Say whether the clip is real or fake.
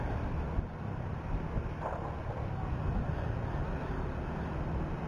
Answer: real